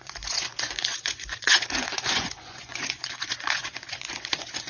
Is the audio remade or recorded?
remade